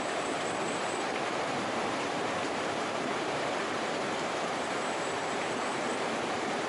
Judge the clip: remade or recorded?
remade